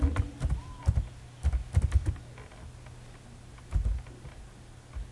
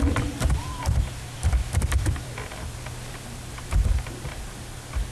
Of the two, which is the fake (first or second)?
second